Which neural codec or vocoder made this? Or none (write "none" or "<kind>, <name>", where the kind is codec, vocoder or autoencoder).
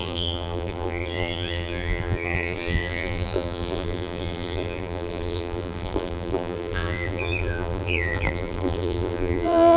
vocoder, BigVGAN v2